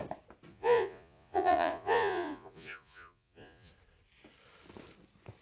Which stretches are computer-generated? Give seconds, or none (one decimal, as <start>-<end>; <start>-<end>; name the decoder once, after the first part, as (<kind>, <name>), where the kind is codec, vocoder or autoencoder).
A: 0.5-3.7 (vocoder, Vocos)